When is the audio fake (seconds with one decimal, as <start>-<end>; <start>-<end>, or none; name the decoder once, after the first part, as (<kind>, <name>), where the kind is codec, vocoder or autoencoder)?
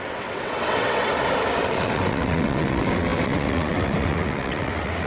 0.0-1.1 (vocoder, WaveNeXt); 1.6-5.1